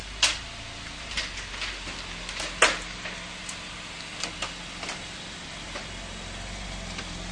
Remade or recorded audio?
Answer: recorded